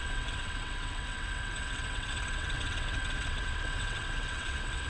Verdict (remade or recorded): remade